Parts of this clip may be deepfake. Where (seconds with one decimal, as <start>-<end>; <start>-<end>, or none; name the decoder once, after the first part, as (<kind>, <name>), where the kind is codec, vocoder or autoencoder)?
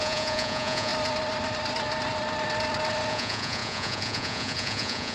0.0-0.9 (vocoder, Vocos); 3.1-5.1